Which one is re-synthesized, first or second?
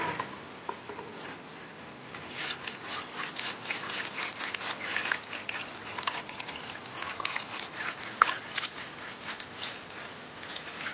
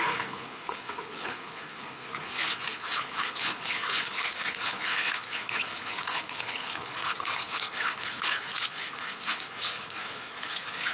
second